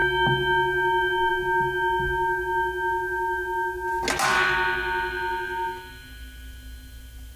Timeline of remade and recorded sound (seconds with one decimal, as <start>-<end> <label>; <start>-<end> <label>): 0.0-7.4 recorded